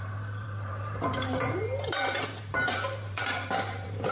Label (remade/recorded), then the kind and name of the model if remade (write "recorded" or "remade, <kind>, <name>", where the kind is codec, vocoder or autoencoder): remade, vocoder, BigVGAN v2